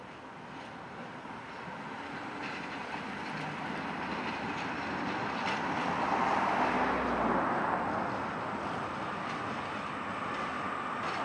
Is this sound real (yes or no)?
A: yes